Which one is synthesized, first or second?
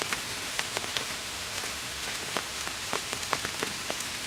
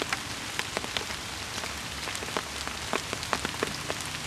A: first